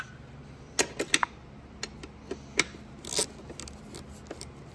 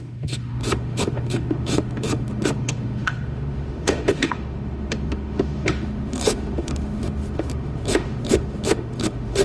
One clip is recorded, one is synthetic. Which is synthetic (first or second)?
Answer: second